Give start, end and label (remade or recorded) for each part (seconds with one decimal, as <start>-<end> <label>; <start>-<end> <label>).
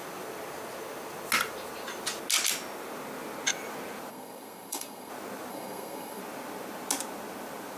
0.0-4.1 recorded; 4.1-5.1 remade; 5.1-5.5 recorded; 5.5-6.2 remade; 6.2-7.8 recorded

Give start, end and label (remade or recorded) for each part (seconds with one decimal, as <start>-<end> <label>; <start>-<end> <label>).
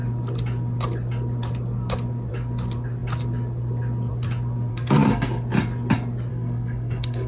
0.0-4.7 recorded; 4.7-5.3 remade; 5.3-6.3 recorded; 6.3-7.3 remade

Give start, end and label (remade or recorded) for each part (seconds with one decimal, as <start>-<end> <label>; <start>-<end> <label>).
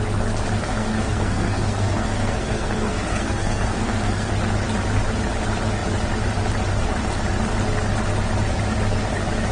0.0-0.6 recorded; 0.6-4.3 remade; 4.3-9.5 recorded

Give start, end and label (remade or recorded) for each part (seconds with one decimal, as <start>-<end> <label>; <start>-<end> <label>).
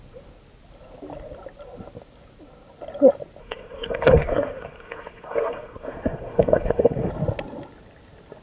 0.0-3.4 recorded; 3.4-7.1 remade; 7.1-8.4 recorded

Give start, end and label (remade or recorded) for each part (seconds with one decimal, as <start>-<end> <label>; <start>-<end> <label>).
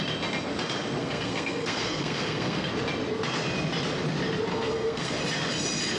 0.0-1.0 recorded; 1.0-2.7 remade; 2.7-4.5 recorded; 4.5-5.2 remade; 5.2-6.0 recorded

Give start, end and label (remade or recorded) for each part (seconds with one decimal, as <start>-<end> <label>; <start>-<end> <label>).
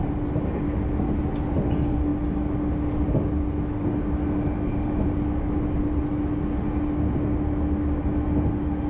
0.0-8.9 recorded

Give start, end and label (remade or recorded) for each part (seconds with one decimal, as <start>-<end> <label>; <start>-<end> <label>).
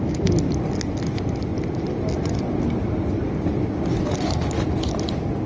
0.0-5.5 recorded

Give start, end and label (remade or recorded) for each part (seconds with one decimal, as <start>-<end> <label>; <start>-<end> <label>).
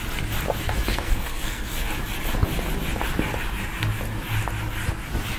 0.0-0.9 recorded; 0.9-1.9 remade; 1.9-5.4 recorded